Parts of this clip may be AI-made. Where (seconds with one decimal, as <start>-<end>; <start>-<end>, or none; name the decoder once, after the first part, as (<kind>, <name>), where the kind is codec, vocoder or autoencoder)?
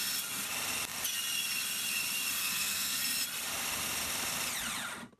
2.4-3.0 (codec, SNAC)